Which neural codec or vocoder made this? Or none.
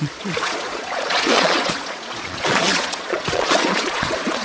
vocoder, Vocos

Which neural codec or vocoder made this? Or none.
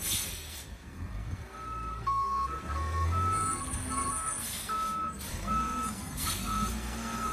codec, SNAC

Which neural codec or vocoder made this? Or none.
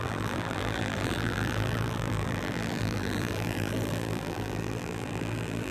vocoder, BigVGAN v2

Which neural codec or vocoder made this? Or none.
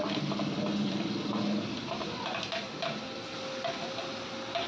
none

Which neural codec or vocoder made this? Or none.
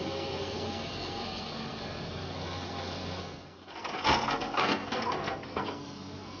codec, SNAC